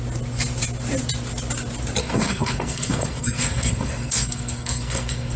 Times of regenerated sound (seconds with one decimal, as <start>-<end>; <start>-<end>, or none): 2.0-5.4